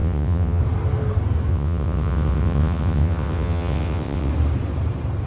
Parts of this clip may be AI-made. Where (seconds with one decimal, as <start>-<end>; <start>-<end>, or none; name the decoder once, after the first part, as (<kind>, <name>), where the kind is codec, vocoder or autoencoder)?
0.0-0.6 (vocoder, WaveNeXt); 1.5-4.3